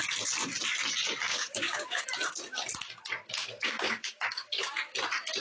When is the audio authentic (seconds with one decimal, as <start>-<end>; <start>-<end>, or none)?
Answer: 0.0-1.3; 2.0-3.4; 4.7-5.4